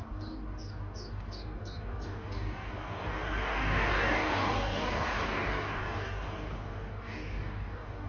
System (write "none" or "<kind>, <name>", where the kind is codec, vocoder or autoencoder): codec, DAC